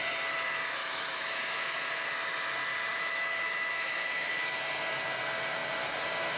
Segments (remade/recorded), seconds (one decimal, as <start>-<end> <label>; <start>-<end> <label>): 0.0-0.8 recorded; 0.8-1.9 remade; 1.9-2.9 recorded; 2.9-4.3 remade; 4.3-6.4 recorded